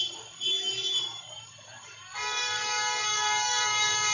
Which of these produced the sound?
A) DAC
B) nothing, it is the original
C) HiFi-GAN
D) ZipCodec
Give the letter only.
A